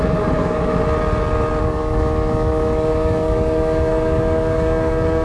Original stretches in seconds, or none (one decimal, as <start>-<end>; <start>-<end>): 0.8-1.6